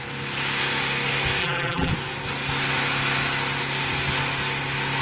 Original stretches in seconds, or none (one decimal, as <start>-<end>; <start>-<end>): 0.0-1.4; 1.9-5.0